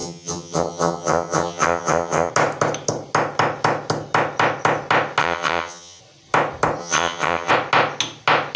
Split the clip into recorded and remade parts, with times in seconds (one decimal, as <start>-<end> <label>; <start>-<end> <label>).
0.0-2.3 remade; 2.3-5.2 recorded; 5.2-6.0 remade; 6.0-6.8 recorded; 6.8-7.5 remade; 7.5-8.6 recorded